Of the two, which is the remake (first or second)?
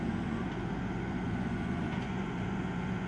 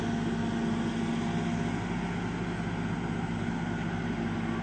first